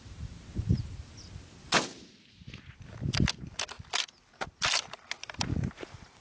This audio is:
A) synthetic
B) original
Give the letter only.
B